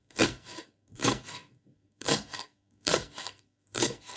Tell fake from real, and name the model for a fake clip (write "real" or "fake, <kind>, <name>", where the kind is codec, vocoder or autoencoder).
fake, codec, SNAC